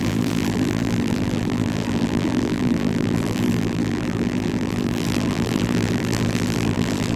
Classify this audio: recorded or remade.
remade